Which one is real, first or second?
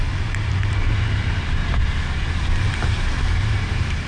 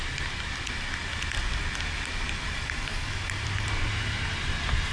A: second